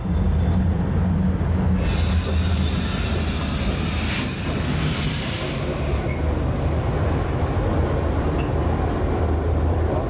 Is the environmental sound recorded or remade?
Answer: recorded